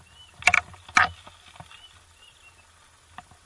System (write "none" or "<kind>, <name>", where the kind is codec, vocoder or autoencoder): none